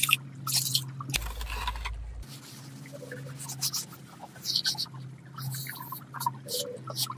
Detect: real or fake real